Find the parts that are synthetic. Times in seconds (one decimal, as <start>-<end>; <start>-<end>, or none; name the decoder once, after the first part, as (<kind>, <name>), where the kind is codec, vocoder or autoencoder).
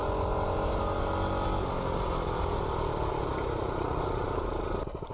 none